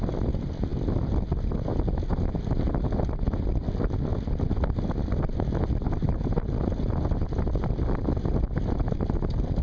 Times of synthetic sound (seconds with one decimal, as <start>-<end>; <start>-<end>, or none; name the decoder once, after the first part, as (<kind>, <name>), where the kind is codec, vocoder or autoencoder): none